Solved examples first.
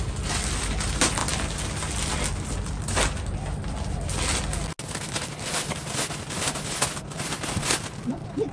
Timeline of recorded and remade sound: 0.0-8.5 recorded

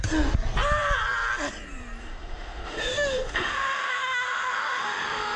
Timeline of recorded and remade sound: 0.0-2.0 recorded; 2.0-5.4 remade